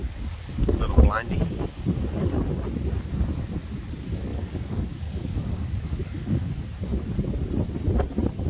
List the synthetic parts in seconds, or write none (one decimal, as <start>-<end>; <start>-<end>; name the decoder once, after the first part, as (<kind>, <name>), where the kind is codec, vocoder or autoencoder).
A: 0.0-0.8 (codec, DAC); 4.3-6.5

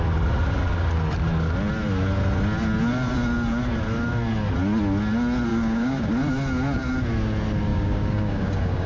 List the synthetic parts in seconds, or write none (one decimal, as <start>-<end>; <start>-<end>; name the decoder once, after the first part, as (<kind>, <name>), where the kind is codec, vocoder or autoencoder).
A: 5.5-6.1 (codec, DAC); 7.7-8.9

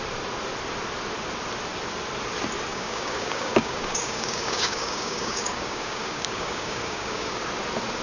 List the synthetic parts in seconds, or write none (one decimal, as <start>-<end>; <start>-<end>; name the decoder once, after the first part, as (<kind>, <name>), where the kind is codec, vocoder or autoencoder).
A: 2.7-7.3 (codec, DAC)

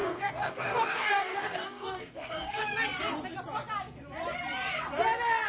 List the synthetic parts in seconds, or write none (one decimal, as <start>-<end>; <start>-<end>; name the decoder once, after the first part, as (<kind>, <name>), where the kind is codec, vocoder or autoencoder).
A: 0.0-2.6 (codec, DAC)

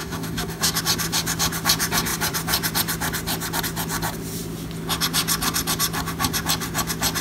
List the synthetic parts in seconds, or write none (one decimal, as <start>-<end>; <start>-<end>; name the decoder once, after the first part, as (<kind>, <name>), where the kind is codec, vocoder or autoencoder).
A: 0.0-0.8 (codec, DAC)